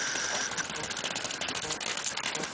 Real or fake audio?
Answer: real